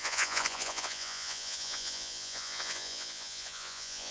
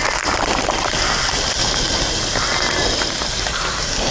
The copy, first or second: first